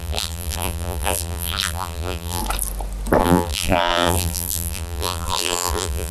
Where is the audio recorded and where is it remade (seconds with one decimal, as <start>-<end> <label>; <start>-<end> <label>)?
0.0-2.4 remade; 2.4-3.2 recorded; 3.2-6.1 remade